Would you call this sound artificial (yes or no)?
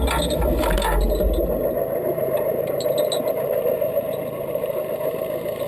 no